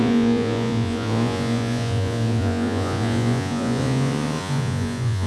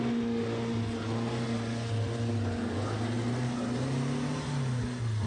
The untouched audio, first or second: second